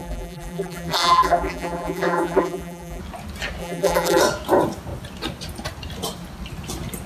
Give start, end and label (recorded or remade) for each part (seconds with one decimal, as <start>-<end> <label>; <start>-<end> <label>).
0.0-3.0 remade; 3.0-3.6 recorded; 3.6-4.2 remade; 4.2-7.1 recorded